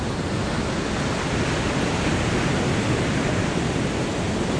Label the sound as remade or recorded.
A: recorded